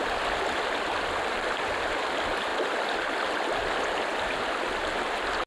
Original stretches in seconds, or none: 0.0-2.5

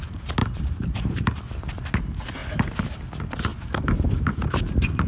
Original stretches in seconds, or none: 0.0-0.4; 1.4-3.5; 4.6-5.1

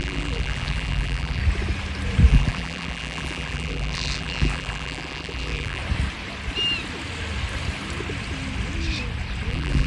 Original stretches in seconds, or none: 1.4-2.3; 5.8-9.5

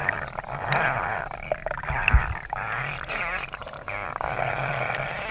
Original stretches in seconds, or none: 0.0-3.2; 3.6-4.5

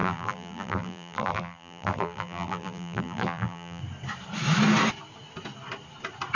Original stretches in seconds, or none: 3.8-6.4

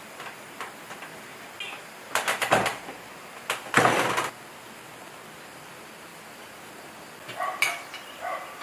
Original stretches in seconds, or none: 0.0-6.1; 6.8-8.6

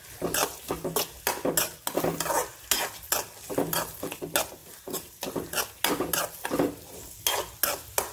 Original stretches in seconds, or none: 0.0-4.6; 5.2-8.1

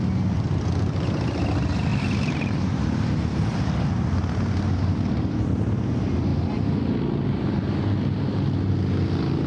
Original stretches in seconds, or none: 0.0-1.9; 3.6-9.5